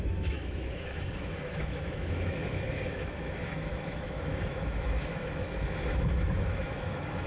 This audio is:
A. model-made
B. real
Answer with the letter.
A